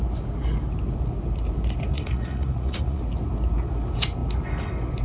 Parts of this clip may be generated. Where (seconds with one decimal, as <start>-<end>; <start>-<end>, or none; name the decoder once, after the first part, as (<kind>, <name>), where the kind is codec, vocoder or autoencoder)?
1.9-3.0 (vocoder, Vocos)